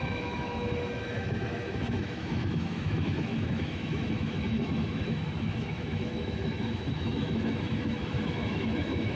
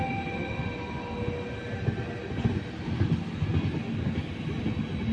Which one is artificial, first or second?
first